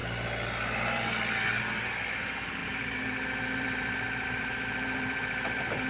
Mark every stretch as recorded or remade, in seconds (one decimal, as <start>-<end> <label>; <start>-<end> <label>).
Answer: 0.0-2.6 recorded; 2.6-5.9 remade